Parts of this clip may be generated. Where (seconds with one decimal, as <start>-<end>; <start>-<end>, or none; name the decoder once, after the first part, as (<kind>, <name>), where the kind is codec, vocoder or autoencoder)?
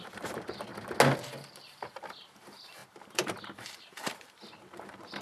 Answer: 0.0-0.7 (vocoder, BigVGAN v2); 1.5-5.2